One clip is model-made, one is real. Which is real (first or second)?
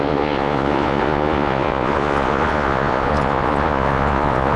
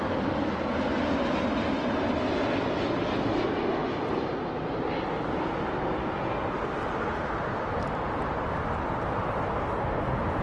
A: second